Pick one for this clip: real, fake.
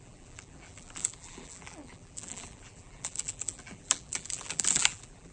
fake